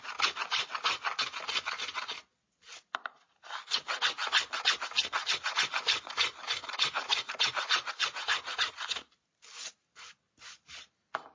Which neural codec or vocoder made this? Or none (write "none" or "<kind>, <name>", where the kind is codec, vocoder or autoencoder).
none